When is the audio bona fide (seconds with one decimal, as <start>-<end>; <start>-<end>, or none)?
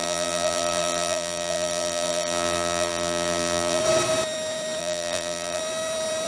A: 3.8-4.8; 5.6-6.3